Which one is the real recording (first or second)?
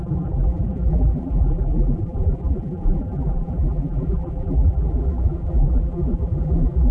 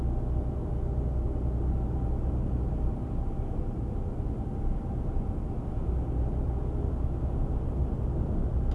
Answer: second